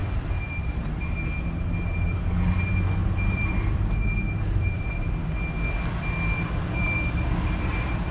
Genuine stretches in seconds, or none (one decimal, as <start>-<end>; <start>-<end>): 1.0-3.0; 4.9-6.8